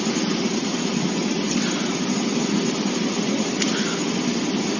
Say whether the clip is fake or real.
real